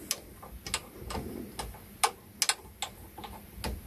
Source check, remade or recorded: recorded